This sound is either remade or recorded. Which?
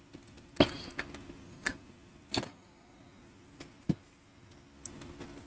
recorded